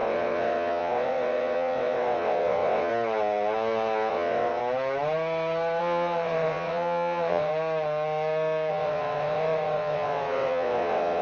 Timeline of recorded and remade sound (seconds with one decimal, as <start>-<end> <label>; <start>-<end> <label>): 0.0-2.9 remade; 2.9-4.1 recorded; 4.1-4.6 remade; 4.6-5.8 recorded; 5.8-7.5 remade; 7.5-8.7 recorded; 8.7-11.2 remade